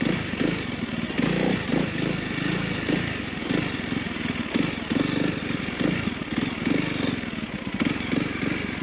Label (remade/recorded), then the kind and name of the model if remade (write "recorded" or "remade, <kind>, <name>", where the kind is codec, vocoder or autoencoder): recorded